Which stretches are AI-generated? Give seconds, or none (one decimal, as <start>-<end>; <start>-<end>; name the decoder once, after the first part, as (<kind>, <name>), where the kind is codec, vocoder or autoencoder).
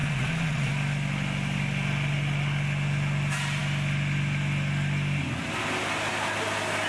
0.0-0.7 (vocoder, Vocos)